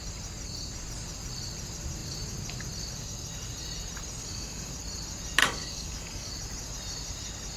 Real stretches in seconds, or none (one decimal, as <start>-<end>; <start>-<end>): 0.0-4.2; 4.7-5.4; 6.3-7.6